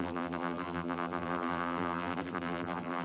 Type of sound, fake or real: fake